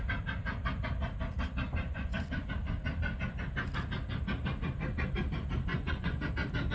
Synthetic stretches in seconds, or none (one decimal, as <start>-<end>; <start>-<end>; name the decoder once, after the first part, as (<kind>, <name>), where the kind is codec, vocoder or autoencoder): 1.7-2.5 (vocoder, Vocos); 5.7-6.3